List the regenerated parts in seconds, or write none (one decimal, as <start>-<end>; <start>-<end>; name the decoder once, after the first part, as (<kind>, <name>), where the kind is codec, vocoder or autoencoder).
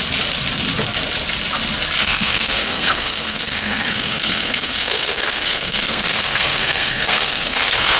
2.0-8.0 (codec, SNAC)